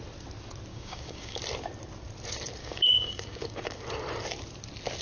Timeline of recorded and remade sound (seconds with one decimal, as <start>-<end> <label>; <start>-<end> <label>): 0.0-0.7 recorded; 0.7-1.4 remade; 1.4-2.6 recorded; 2.6-3.8 remade; 3.8-5.0 recorded